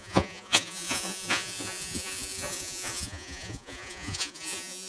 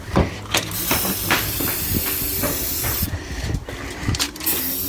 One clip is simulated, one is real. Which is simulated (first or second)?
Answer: first